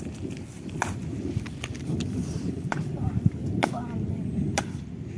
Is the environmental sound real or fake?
real